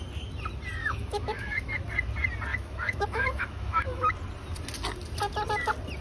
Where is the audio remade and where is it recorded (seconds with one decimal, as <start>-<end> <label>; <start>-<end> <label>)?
0.0-0.8 recorded; 0.8-1.8 remade; 1.8-2.5 recorded; 2.5-4.1 remade; 4.1-6.0 recorded